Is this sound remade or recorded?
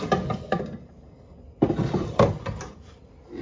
recorded